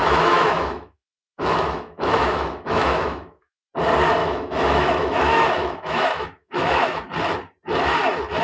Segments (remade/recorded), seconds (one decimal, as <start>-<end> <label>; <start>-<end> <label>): 0.0-3.7 remade; 3.7-4.2 recorded; 4.2-7.0 remade; 7.0-8.4 recorded